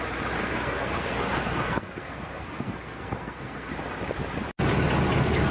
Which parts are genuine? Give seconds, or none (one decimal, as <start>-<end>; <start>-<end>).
0.0-0.4; 3.7-5.5